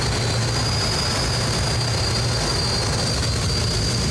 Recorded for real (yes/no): yes